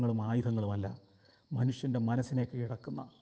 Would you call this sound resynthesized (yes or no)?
yes